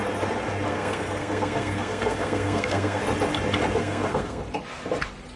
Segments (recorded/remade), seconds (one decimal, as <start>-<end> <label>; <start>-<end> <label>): 0.0-0.7 recorded; 0.7-3.0 remade; 3.0-3.8 recorded; 3.8-4.4 remade; 4.4-5.4 recorded